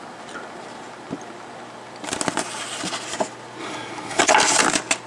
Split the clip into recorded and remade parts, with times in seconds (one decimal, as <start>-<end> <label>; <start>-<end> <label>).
0.0-3.6 recorded; 3.6-4.2 remade; 4.2-5.1 recorded